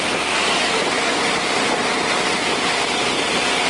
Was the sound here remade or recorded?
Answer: recorded